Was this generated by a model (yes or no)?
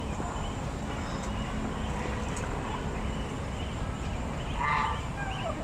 no